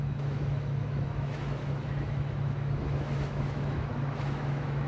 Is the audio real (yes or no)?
no